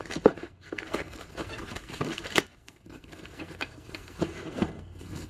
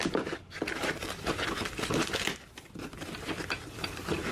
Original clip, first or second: second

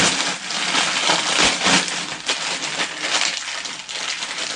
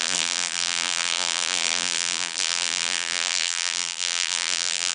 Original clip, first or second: first